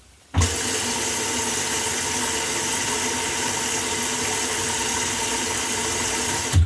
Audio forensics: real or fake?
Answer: real